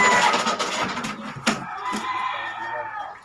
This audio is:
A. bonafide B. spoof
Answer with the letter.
A